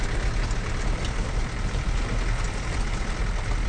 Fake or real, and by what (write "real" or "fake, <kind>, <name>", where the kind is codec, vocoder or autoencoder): real